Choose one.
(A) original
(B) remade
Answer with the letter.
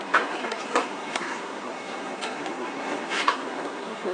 B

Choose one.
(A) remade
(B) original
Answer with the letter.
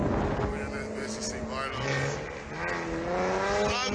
B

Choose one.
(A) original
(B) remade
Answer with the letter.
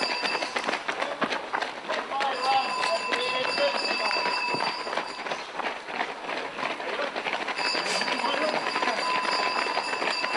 A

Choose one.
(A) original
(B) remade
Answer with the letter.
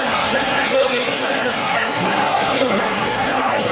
B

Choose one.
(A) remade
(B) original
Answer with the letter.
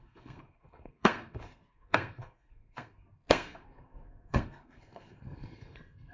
A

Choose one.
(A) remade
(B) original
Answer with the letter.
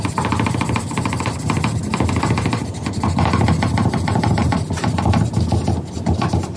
B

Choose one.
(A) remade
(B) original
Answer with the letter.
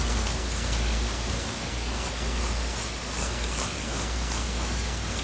A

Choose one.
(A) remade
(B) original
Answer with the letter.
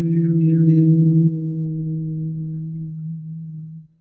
A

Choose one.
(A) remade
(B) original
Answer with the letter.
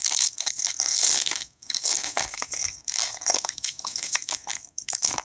A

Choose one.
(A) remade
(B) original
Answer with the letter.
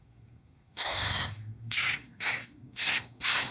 A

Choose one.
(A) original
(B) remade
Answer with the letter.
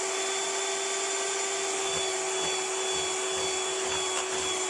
A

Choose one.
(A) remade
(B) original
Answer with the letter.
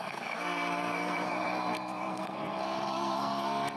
A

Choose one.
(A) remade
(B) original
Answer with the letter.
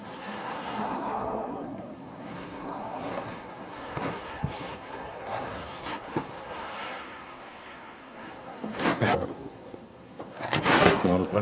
A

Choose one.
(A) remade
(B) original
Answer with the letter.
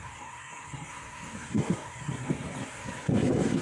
A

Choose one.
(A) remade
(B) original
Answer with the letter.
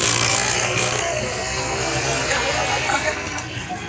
A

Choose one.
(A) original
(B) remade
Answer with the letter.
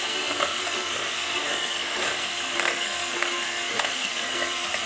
B